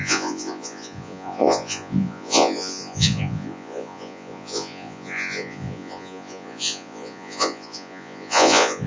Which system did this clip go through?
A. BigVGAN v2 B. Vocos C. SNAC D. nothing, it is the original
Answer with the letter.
B